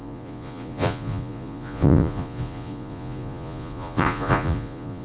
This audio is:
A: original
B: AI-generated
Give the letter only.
B